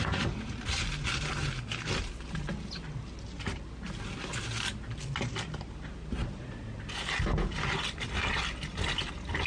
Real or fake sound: real